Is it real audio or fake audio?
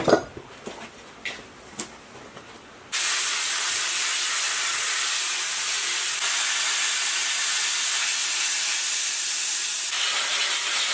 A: real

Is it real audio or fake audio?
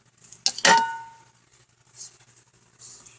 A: real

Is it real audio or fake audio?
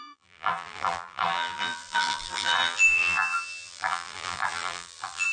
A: fake